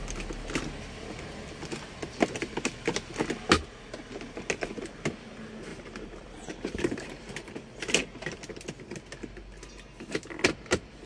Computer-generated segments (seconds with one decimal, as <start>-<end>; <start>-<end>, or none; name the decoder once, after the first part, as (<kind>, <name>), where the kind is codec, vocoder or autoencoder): 5.7-7.6 (vocoder, BigVGAN v2)